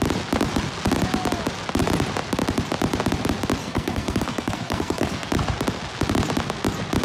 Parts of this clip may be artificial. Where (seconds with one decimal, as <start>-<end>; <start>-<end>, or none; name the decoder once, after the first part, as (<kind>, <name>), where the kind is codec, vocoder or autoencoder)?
3.6-5.3 (codec, SNAC)